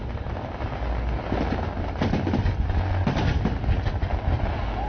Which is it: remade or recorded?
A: recorded